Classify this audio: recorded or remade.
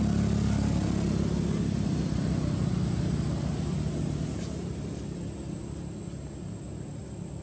recorded